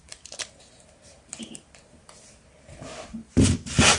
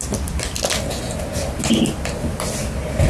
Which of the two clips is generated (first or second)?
first